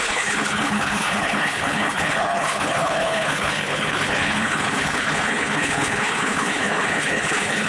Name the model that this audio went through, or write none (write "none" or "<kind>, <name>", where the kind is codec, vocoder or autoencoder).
codec, HILCodec